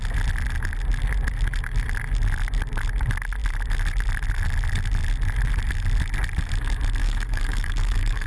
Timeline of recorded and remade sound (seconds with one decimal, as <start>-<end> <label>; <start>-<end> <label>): 0.0-7.0 recorded; 7.0-8.3 remade